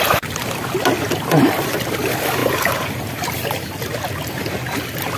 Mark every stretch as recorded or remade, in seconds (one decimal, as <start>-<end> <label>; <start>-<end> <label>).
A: 0.0-5.2 recorded